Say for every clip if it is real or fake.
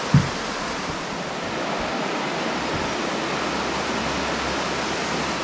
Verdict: real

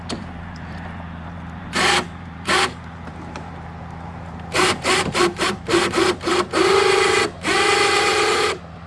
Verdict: fake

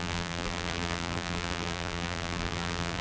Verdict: fake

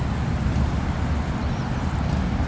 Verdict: real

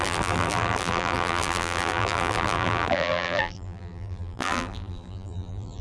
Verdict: fake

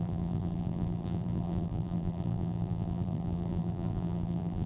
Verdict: fake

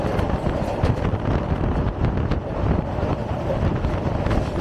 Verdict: real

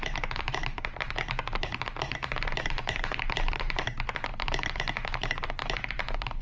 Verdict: fake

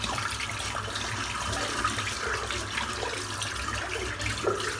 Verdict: real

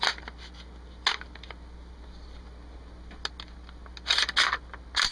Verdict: real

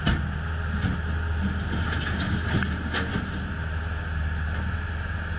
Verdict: real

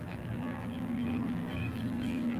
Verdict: fake